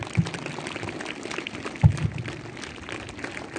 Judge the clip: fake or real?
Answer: real